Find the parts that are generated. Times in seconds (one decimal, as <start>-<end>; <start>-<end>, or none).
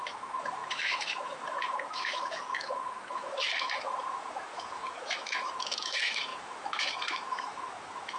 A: 0.0-8.2